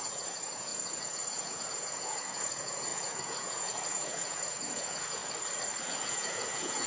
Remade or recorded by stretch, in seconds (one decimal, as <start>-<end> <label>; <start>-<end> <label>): 0.0-5.2 remade; 5.2-5.8 recorded; 5.8-6.9 remade